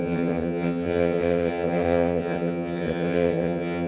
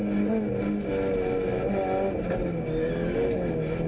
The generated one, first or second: first